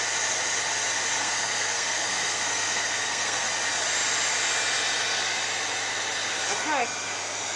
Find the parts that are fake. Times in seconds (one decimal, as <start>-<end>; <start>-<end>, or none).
1.2-3.5